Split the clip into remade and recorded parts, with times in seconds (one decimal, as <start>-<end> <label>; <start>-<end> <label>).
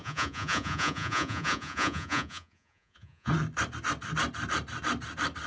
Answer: 0.0-3.3 remade; 3.3-5.5 recorded